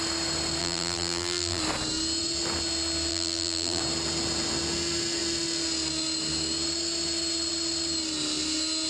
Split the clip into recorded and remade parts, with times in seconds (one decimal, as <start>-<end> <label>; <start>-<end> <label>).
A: 0.0-0.6 recorded; 0.6-1.6 remade; 1.6-3.1 recorded; 3.1-3.8 remade; 3.8-8.9 recorded